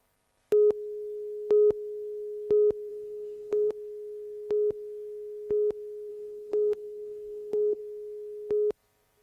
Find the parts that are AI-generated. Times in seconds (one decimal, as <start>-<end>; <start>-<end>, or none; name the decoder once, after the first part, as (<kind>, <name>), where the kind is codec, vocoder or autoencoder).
2.9-3.7 (codec, DAC); 6.1-7.8